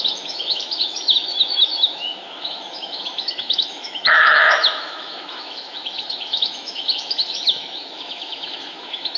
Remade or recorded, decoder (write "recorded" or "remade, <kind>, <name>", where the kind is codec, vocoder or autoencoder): remade, autoencoder, DAC-VAE